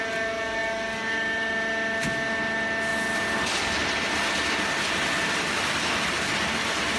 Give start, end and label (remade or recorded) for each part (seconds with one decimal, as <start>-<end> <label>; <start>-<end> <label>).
0.0-7.0 recorded

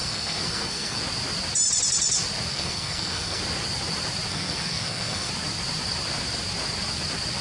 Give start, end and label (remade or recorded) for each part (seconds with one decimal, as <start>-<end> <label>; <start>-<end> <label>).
0.0-1.0 remade; 1.0-2.5 recorded; 2.5-3.4 remade; 3.4-4.3 recorded; 4.3-5.3 remade; 5.3-7.4 recorded

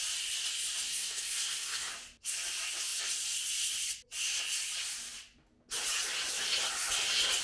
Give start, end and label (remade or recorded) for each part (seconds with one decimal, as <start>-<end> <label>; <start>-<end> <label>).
0.0-0.9 recorded; 0.9-1.9 remade; 1.9-7.4 recorded

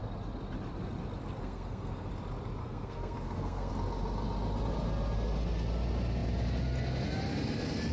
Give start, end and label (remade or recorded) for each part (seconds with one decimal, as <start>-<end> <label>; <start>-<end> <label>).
0.0-1.4 recorded; 1.4-2.1 remade; 2.1-2.6 recorded; 2.6-3.7 remade; 3.7-7.9 recorded

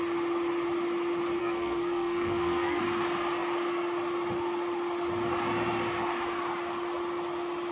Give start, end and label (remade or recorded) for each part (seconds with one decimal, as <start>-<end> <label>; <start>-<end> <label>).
0.0-1.4 recorded; 1.4-2.8 remade; 2.8-7.7 recorded

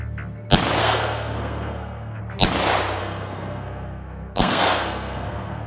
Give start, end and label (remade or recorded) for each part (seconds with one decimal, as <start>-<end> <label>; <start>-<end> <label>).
0.0-0.8 recorded; 0.8-2.2 remade; 2.2-3.0 recorded; 3.0-5.7 remade

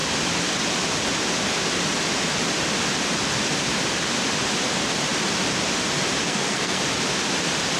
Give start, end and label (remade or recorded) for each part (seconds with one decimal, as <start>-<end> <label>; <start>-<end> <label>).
0.0-6.2 recorded; 6.2-6.8 remade; 6.8-7.8 recorded

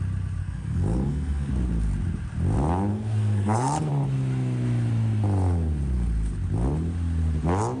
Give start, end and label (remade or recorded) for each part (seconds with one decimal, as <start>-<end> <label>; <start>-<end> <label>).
0.0-0.4 recorded; 0.4-1.5 remade; 1.5-2.9 recorded; 2.9-3.9 remade; 3.9-7.8 recorded